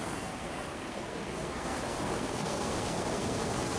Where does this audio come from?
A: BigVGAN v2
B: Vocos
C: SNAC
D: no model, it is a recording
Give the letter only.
C